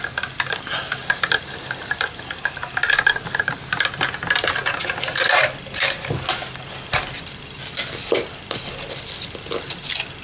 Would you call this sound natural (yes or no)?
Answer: yes